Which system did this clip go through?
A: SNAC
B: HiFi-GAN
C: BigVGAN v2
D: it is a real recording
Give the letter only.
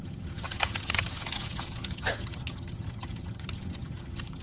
B